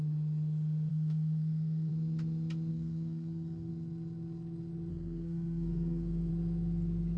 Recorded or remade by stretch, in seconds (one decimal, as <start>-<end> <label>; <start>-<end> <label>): 0.0-0.9 recorded; 0.9-1.9 remade; 1.9-2.7 recorded; 2.7-3.7 remade; 3.7-4.9 recorded; 4.9-6.3 remade; 6.3-7.2 recorded